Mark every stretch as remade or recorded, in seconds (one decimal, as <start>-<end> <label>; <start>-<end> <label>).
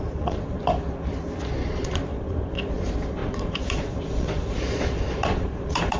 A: 0.0-0.6 remade; 0.6-1.5 recorded; 1.5-6.0 remade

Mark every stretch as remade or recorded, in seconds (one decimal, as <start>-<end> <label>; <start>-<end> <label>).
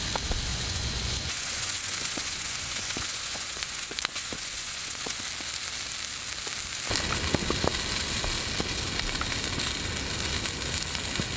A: 0.0-0.5 recorded; 0.5-5.2 remade; 5.2-11.4 recorded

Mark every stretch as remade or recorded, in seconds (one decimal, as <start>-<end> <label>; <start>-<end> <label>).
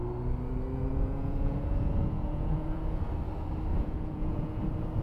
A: 0.0-0.9 recorded; 0.9-3.0 remade; 3.0-3.7 recorded; 3.7-4.6 remade; 4.6-5.0 recorded